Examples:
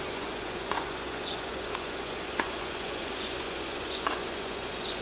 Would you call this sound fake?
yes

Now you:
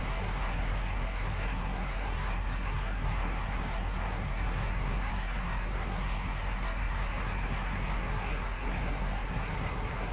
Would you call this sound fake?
yes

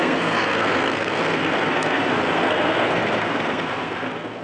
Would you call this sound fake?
yes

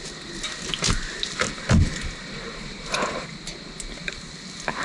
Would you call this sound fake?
no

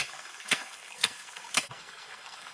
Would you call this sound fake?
yes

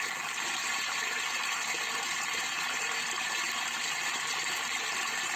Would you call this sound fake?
no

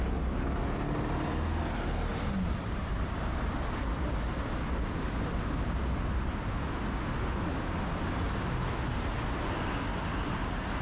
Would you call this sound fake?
no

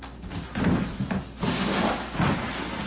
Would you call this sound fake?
no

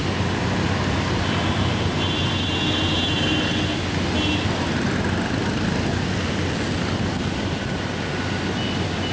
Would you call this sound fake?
no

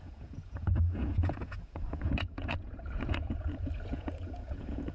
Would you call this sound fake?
yes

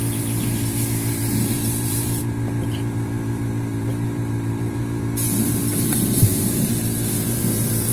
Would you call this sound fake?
yes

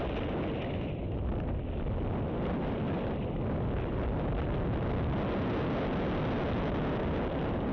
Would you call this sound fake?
no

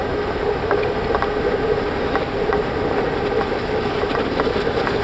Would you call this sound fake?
no